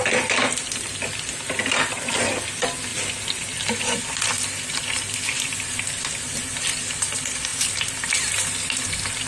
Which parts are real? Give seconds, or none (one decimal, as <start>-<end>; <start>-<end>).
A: 0.0-9.3